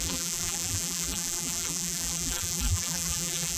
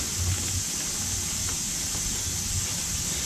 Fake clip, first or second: first